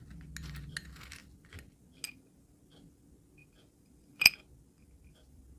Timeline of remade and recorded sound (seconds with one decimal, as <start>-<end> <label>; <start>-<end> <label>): 0.0-5.6 recorded

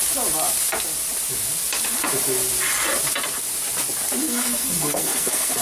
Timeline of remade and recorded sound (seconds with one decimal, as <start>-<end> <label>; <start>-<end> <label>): 0.0-4.2 recorded; 4.2-5.6 remade